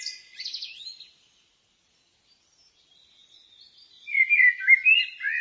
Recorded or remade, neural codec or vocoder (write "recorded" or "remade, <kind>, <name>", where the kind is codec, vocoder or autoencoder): recorded